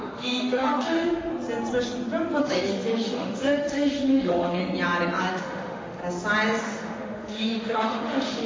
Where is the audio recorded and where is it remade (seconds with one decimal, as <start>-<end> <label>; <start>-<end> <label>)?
0.0-1.3 remade; 1.3-2.4 recorded; 2.4-4.6 remade; 4.6-5.3 recorded; 5.3-6.0 remade; 6.0-6.6 recorded; 6.6-8.5 remade

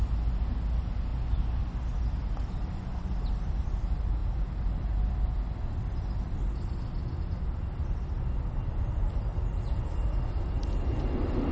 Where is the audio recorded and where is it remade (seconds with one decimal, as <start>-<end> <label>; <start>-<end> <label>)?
0.0-11.5 recorded

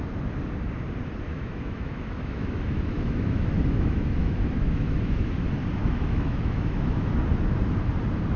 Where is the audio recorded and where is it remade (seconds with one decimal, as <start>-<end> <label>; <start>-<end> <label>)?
0.0-1.3 recorded; 1.3-5.3 remade; 5.3-5.8 recorded; 5.8-7.1 remade; 7.1-8.4 recorded

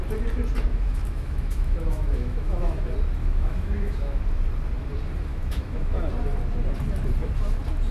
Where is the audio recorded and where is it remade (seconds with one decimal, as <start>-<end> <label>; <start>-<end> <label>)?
0.0-0.7 recorded; 0.7-2.8 remade; 2.8-3.2 recorded; 3.2-4.2 remade; 4.2-5.3 recorded; 5.3-6.1 remade; 6.1-7.9 recorded

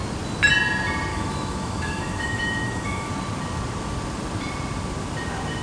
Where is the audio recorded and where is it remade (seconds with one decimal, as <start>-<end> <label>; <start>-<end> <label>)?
0.0-1.1 recorded; 1.1-3.1 remade; 3.1-5.6 recorded

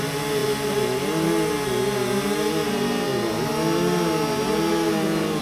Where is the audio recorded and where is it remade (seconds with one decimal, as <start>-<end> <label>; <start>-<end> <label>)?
0.0-5.4 recorded